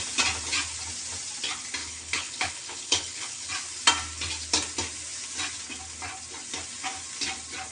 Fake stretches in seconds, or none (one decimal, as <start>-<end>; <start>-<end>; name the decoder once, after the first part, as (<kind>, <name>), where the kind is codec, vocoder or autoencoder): 1.8-3.5 (codec, HILCodec)